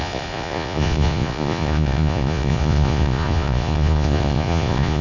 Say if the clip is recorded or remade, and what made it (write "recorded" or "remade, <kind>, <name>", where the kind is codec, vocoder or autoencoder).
remade, vocoder, Vocos